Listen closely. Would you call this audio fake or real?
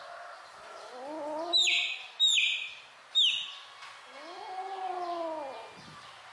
real